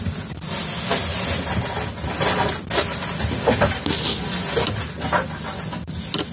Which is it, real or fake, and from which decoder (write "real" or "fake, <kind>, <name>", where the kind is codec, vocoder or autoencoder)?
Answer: real